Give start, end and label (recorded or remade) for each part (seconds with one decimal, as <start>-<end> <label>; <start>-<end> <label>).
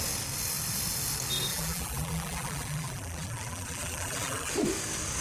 0.0-1.5 recorded; 1.5-4.5 remade; 4.5-5.2 recorded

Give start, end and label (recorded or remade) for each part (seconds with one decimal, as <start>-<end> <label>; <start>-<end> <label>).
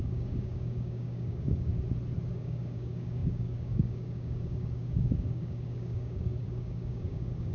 0.0-1.7 remade; 1.7-2.3 recorded; 2.3-7.5 remade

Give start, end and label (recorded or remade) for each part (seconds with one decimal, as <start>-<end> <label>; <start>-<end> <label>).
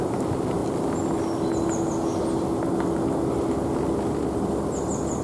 0.0-5.2 recorded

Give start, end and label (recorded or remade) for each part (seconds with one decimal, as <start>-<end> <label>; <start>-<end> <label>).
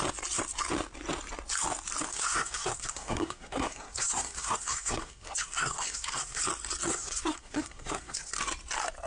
0.0-2.1 recorded; 2.1-6.4 remade; 6.4-6.9 recorded; 6.9-8.3 remade; 8.3-9.1 recorded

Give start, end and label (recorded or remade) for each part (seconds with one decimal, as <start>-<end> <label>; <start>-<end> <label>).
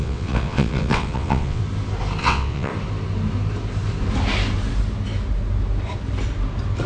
0.0-1.6 remade; 1.6-2.2 recorded; 2.2-2.7 remade; 2.7-6.9 recorded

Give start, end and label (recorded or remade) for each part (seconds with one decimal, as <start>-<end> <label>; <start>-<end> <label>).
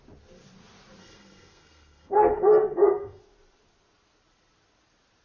0.0-1.0 recorded; 1.0-3.2 remade; 3.2-5.2 recorded